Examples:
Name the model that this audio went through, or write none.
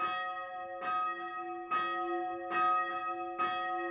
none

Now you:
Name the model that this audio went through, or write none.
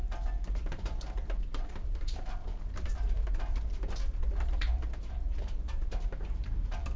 vocoder, BigVGAN v2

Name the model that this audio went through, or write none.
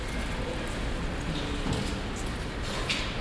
none